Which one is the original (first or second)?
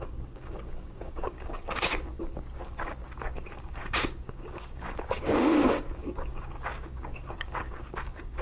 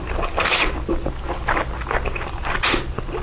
second